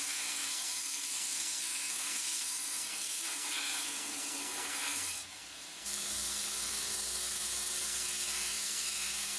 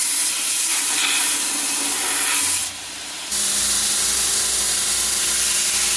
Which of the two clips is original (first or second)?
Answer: second